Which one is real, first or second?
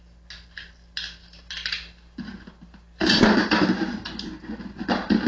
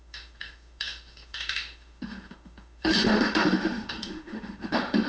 first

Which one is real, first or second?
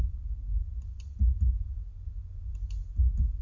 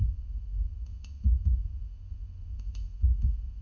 first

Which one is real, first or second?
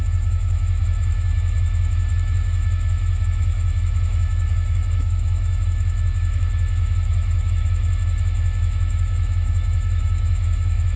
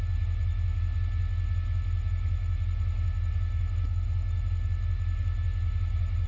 second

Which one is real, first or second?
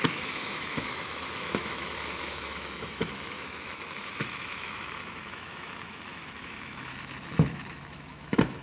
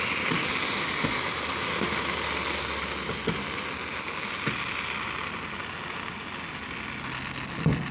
second